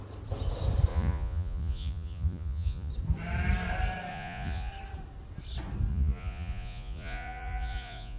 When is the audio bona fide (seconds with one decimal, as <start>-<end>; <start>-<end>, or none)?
0.0-0.9; 2.9-4.1; 4.7-5.9